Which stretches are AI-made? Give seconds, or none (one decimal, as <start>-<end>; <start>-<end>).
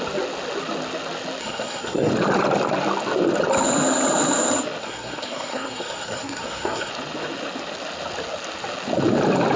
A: 1.4-2.1; 4.8-6.9